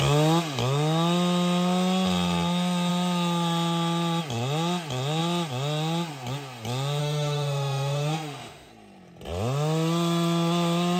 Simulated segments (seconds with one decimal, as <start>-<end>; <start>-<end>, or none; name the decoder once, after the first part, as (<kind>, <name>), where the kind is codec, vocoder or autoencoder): 7.0-8.7 (autoencoder, DAC-VAE)